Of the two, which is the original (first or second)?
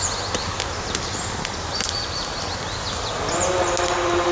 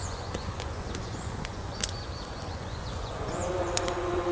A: first